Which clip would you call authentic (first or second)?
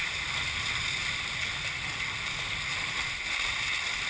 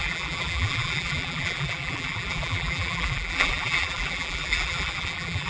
first